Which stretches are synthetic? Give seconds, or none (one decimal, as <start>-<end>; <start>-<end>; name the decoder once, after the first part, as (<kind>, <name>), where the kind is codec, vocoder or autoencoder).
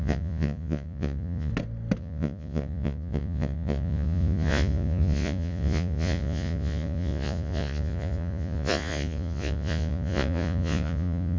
0.0-1.5 (vocoder, Vocos); 2.0-11.4